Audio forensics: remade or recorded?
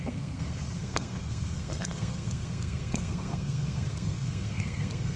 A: remade